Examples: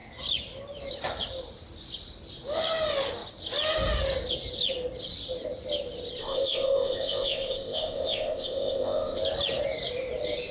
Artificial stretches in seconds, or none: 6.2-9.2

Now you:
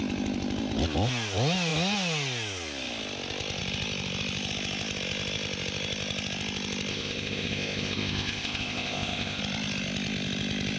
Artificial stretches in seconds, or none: 6.9-9.4

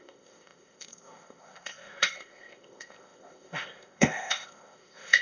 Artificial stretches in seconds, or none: 0.0-5.2

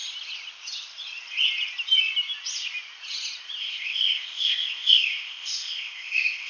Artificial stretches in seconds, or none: 3.6-6.5

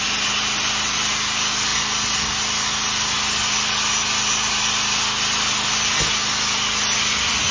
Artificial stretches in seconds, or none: none